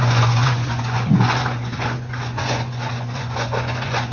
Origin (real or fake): fake